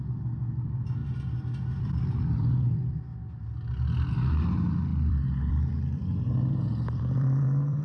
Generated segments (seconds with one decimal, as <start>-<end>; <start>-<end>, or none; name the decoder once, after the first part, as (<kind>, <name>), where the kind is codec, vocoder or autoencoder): 0.0-1.0 (vocoder, BigVGAN v2); 1.8-3.1; 4.3-7.8